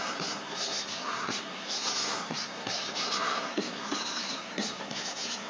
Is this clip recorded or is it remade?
remade